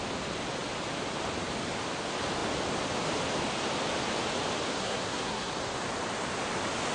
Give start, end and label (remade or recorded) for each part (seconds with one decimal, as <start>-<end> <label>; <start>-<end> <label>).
0.0-4.7 recorded; 4.7-5.5 remade; 5.5-6.9 recorded